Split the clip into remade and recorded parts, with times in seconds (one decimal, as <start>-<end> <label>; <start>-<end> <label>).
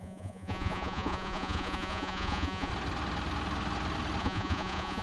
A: 0.0-2.7 remade; 2.7-4.2 recorded; 4.2-5.0 remade